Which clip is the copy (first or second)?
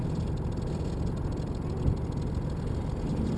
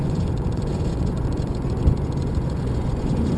second